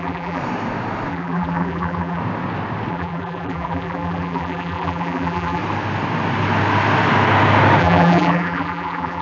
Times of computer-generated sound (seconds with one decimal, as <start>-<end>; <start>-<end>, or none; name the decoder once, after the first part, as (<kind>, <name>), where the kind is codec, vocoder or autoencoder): 0.0-0.4 (vocoder, BigVGAN v2); 1.1-2.2; 2.9-5.6; 7.8-9.2